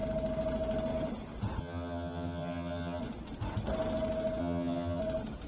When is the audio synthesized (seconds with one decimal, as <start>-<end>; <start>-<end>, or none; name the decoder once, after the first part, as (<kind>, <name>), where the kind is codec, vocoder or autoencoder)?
1.6-3.0 (vocoder, HiFi-GAN); 4.4-5.0